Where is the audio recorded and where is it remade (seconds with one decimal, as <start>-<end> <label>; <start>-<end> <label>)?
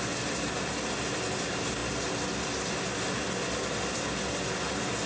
0.0-5.1 recorded